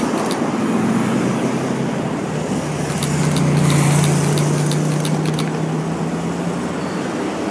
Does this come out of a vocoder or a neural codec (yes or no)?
no